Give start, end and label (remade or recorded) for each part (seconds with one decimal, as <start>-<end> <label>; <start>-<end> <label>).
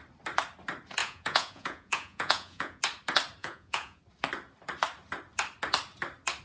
0.0-1.0 recorded; 1.0-2.8 remade; 2.8-3.4 recorded; 3.4-4.0 remade; 4.0-6.4 recorded